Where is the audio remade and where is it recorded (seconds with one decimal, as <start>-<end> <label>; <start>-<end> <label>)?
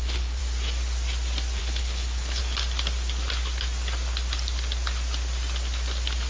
0.0-0.4 remade; 0.4-1.6 recorded; 1.6-2.4 remade; 2.4-6.3 recorded